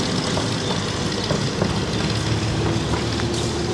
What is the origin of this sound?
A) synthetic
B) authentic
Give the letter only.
B